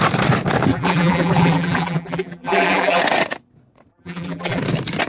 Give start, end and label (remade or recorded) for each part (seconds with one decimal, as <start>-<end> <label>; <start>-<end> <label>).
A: 0.0-0.7 recorded; 0.7-3.0 remade; 3.0-3.9 recorded; 3.9-4.6 remade; 4.6-5.1 recorded